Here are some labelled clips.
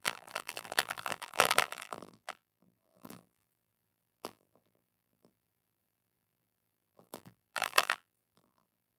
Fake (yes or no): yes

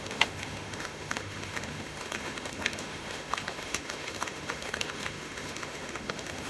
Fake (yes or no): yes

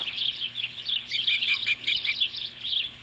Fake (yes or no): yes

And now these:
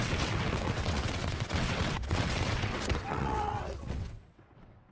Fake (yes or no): yes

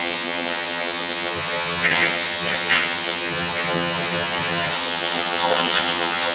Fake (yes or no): yes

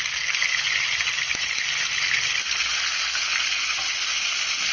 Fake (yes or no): no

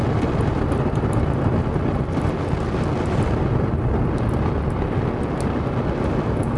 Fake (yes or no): no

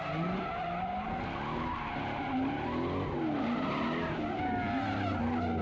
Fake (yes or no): no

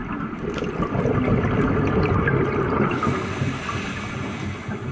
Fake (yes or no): no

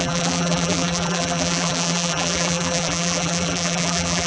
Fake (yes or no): yes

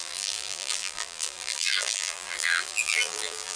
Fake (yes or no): yes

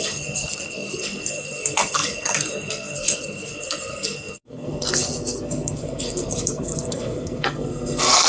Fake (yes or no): yes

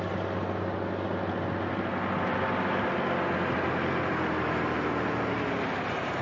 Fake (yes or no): no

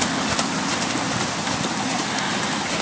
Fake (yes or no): no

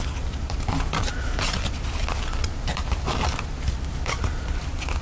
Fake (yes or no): no